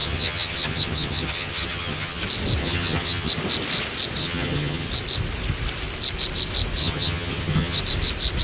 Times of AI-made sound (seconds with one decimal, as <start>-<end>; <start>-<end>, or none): 0.0-2.2; 2.6-3.3; 4.2-4.9; 6.8-7.8